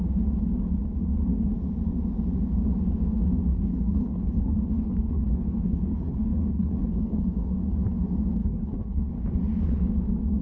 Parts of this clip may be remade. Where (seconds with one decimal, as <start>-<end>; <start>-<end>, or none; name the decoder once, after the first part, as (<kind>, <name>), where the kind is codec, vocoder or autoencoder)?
3.5-7.2 (codec, HILCodec); 8.4-9.1